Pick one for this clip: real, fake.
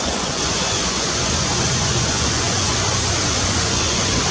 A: fake